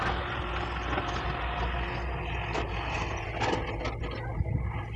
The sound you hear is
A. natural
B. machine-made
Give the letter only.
A